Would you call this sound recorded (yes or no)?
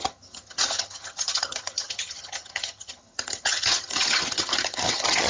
no